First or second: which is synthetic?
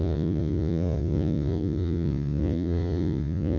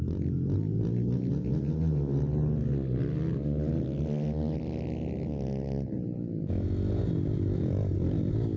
first